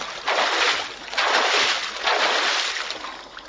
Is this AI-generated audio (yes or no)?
no